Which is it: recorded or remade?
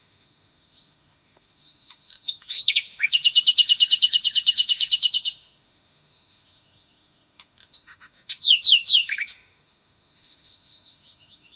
remade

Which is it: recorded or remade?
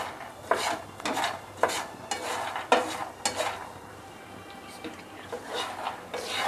recorded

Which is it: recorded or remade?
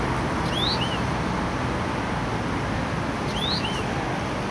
recorded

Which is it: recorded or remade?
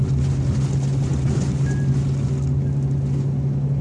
recorded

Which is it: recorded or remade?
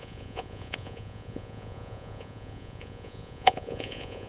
remade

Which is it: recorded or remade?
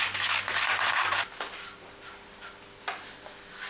recorded